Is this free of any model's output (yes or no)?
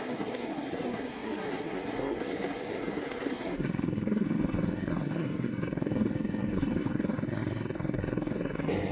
no